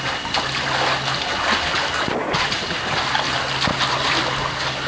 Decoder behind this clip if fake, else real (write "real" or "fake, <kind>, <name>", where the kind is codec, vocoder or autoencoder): real